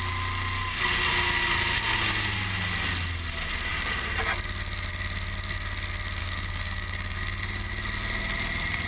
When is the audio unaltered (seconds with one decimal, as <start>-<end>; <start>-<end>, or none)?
0.0-6.2; 7.7-8.9